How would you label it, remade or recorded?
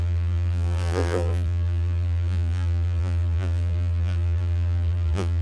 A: remade